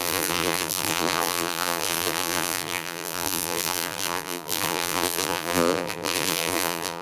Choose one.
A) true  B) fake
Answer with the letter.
B